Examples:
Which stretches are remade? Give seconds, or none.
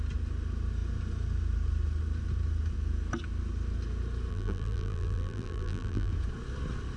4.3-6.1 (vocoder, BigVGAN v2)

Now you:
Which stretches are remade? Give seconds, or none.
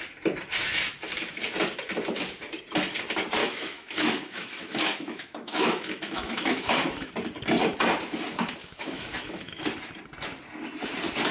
3.4-7.1 (autoencoder, DAC-VAE); 8.6-9.6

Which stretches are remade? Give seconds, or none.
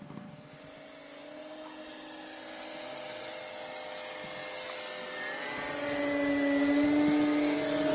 none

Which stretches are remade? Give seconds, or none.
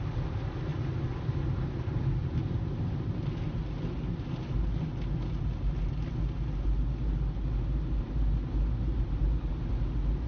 none